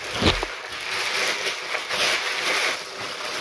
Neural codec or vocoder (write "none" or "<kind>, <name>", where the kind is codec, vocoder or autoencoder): none